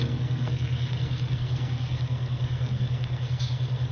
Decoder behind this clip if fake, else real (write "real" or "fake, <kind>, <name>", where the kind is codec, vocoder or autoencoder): fake, codec, SNAC